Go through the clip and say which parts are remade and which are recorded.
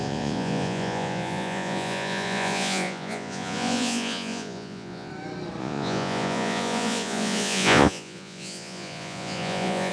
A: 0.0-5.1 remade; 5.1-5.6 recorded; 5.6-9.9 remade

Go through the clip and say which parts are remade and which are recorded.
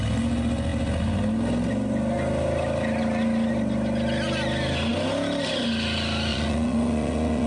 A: 0.0-6.3 recorded; 6.3-7.5 remade